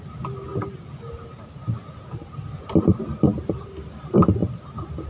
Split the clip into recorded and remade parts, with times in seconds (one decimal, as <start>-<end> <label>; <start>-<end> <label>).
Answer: 0.0-5.1 recorded